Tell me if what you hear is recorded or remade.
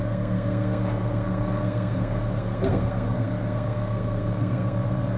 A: remade